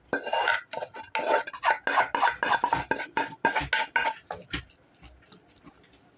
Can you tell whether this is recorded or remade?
recorded